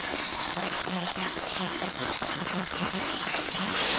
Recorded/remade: remade